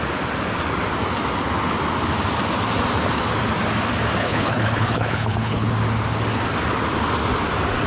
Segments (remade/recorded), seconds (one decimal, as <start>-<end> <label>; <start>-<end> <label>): 0.0-4.2 recorded; 4.2-5.7 remade; 5.7-7.9 recorded